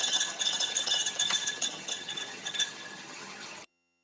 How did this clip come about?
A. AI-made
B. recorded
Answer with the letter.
A